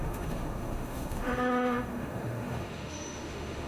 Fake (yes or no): yes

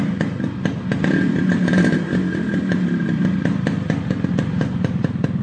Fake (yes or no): no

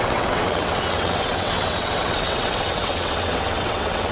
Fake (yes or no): yes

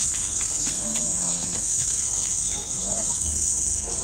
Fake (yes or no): yes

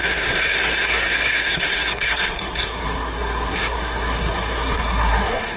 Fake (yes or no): yes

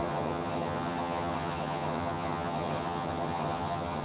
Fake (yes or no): yes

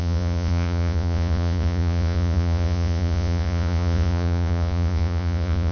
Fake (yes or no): yes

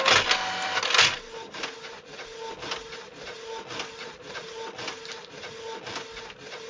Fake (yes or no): no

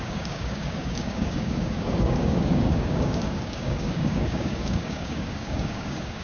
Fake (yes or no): yes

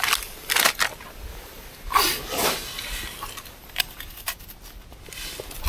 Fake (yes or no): no